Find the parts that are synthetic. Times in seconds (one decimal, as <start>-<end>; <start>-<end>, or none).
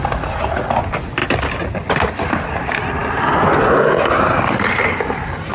none